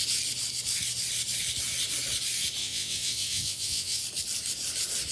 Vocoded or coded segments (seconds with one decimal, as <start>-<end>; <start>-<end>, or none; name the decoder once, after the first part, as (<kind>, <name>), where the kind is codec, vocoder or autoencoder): 2.6-4.0 (vocoder, WaveNeXt)